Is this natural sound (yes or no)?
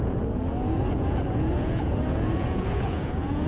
no